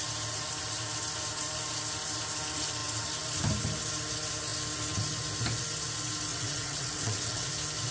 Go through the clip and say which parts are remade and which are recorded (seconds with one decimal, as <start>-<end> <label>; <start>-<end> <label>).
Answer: 0.0-6.3 recorded; 6.3-7.5 remade; 7.5-7.9 recorded